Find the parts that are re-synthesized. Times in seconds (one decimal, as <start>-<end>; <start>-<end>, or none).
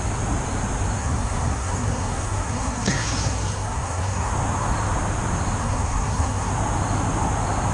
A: 1.0-4.3; 5.6-6.5